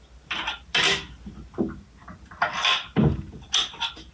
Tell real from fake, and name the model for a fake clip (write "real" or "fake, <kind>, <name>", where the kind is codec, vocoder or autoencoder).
real